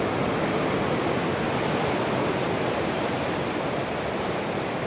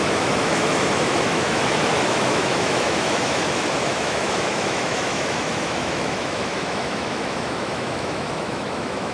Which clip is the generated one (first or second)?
second